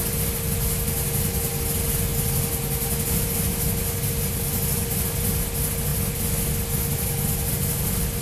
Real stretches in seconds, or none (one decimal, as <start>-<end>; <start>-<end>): 0.0-8.2

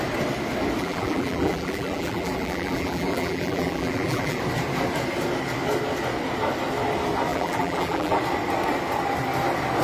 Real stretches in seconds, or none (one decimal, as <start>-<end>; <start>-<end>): 0.0-0.8; 4.4-7.3; 8.2-9.8

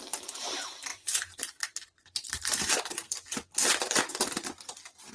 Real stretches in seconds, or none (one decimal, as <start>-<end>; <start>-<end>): 0.0-0.9; 4.0-5.1

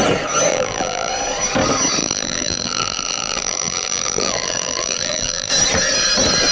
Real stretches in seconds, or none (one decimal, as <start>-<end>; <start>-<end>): 0.0-0.5; 1.1-2.0; 5.5-6.5

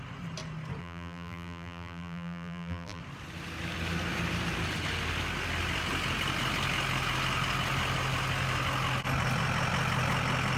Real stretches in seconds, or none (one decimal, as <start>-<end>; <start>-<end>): 0.0-0.8; 3.0-10.6

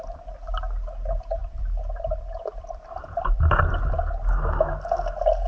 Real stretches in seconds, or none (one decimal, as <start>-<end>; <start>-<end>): 0.0-1.4; 3.9-5.5

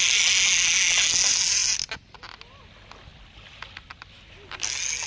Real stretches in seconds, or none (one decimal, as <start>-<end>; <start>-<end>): 0.0-5.1